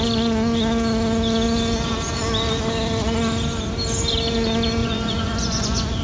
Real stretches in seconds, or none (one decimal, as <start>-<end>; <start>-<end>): 0.0-4.8

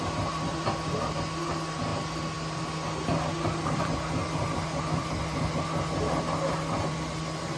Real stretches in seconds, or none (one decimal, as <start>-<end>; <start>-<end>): 0.0-7.6